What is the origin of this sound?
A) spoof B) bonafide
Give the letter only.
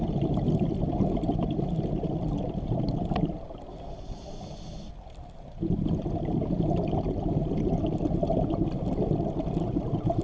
B